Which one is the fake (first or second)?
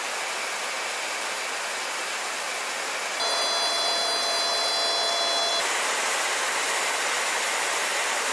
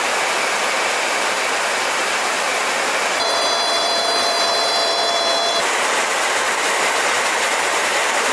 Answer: second